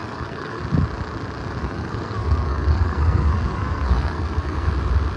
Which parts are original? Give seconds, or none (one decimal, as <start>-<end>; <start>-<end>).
0.6-1.6; 4.7-5.2